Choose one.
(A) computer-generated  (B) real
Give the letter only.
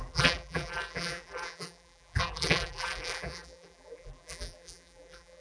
A